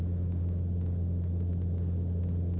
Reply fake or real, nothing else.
real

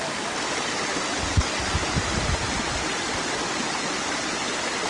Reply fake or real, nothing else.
real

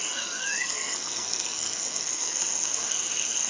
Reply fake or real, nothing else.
fake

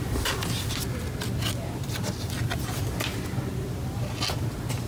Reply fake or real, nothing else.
real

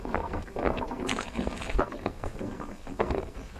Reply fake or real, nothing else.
fake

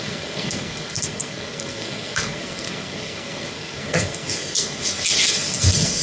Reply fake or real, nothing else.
fake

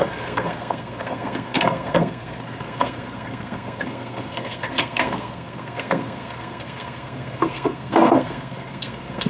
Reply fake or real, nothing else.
fake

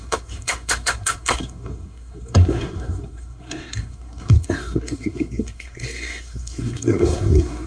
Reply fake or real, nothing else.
fake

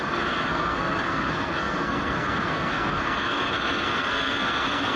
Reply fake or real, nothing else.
fake